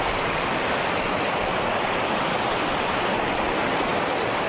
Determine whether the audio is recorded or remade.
recorded